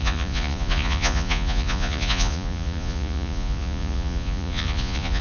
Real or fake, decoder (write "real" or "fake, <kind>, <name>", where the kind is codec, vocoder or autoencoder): fake, vocoder, Vocos